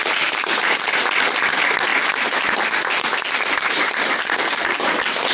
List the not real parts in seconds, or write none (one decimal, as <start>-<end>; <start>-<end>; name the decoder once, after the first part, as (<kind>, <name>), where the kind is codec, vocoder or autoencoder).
0.0-1.0 (vocoder, BigVGAN v2); 1.9-5.3